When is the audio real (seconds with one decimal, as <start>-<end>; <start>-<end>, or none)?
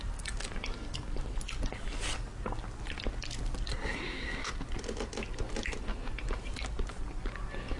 0.0-3.7; 4.5-7.8